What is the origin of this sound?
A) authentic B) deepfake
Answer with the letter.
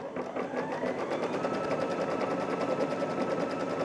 A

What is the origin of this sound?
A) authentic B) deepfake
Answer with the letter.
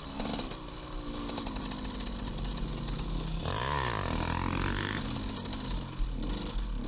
A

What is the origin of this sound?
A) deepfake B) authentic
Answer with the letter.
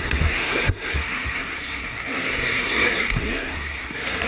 A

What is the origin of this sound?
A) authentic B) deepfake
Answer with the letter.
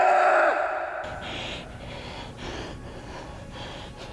A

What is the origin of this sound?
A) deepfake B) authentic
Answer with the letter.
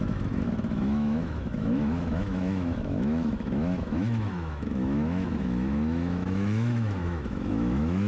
A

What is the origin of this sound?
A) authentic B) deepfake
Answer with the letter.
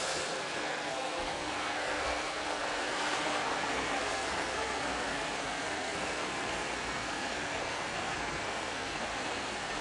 B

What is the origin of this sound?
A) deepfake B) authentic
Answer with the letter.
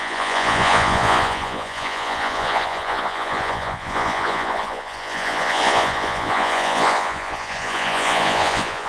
A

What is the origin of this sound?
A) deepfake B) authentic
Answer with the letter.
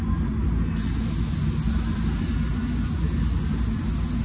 B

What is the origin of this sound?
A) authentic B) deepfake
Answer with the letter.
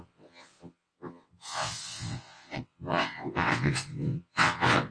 B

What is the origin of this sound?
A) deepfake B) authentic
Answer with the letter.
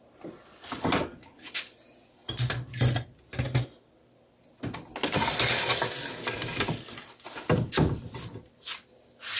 B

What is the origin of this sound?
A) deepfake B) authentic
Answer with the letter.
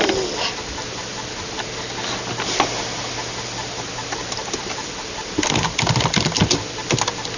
B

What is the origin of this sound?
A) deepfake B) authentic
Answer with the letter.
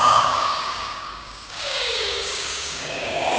A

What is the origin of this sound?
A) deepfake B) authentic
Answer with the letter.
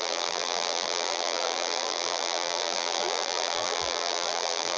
A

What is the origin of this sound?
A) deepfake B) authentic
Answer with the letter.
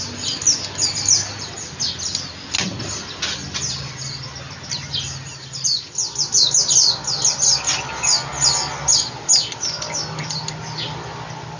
B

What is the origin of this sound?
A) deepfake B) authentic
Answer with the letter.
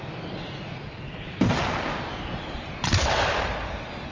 B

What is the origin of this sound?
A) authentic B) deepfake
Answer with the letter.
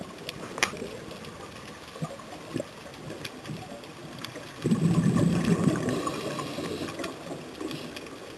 A